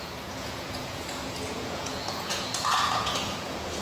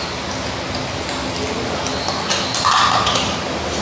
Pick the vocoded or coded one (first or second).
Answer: first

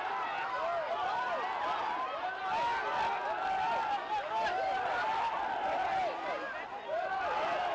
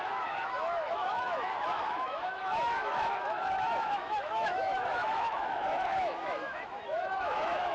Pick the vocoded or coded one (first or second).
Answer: second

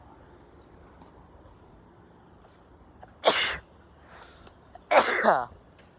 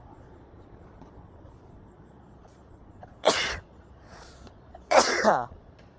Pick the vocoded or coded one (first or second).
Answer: second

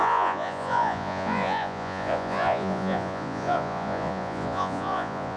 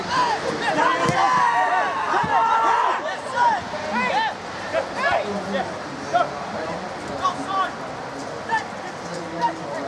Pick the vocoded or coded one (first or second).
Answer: first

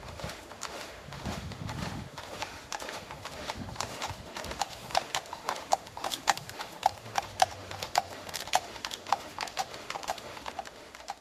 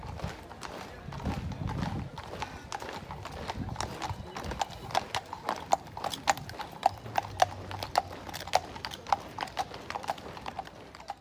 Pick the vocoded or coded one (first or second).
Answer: first